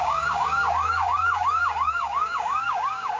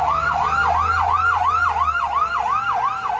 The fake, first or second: first